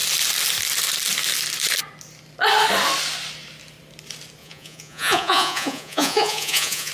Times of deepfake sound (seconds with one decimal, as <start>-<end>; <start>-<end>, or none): 4.4-6.9